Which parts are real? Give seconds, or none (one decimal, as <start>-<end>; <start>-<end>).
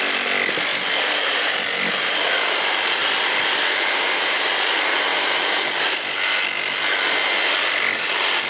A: 0.0-0.7; 1.4-3.0; 4.4-8.5